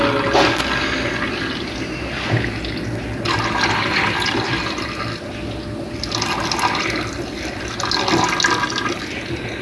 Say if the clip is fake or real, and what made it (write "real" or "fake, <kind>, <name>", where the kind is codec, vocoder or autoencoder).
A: real